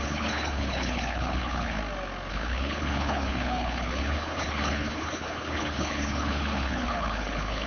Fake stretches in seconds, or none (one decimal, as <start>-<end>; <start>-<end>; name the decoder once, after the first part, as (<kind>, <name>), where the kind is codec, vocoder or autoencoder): 0.0-1.8 (codec, HILCodec); 2.3-7.7